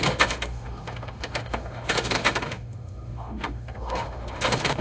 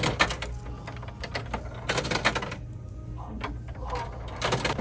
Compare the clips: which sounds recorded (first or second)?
second